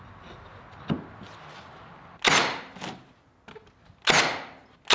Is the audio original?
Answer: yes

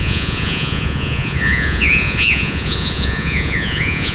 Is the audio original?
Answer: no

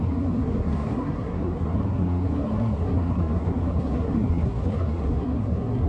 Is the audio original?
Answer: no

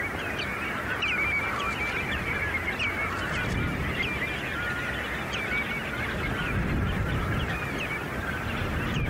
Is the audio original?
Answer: yes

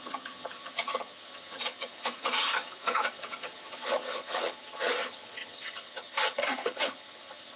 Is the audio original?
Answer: no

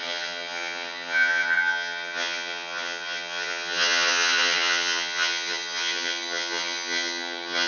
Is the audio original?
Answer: no